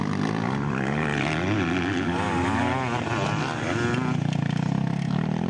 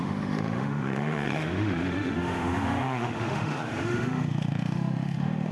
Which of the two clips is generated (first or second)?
second